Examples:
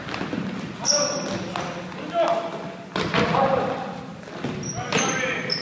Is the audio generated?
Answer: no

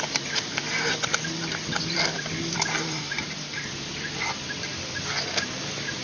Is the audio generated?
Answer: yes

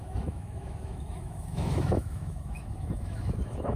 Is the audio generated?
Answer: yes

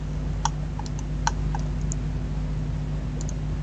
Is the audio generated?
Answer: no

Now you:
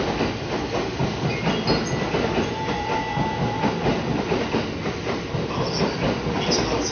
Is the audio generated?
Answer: no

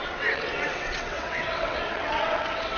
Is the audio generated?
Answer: yes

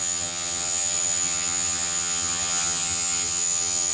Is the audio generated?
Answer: yes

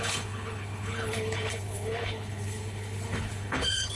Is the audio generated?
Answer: yes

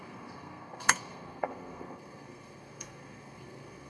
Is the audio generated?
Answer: yes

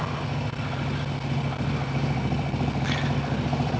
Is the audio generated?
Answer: no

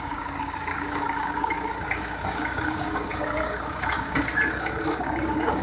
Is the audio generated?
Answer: yes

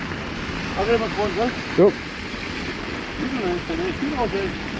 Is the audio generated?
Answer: no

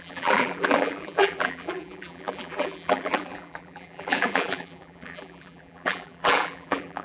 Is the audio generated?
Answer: yes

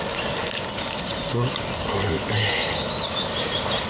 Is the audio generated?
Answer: no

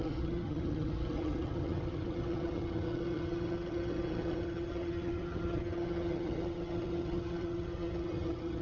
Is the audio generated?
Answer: yes